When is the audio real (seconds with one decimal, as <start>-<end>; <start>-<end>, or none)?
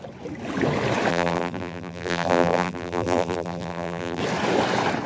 0.0-1.1; 4.2-5.1